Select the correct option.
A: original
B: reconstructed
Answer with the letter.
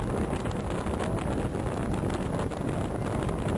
A